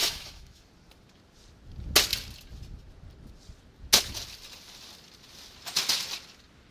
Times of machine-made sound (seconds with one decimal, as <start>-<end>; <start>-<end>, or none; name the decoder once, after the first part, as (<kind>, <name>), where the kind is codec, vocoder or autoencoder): 0.0-0.6 (autoencoder, DAC-VAE)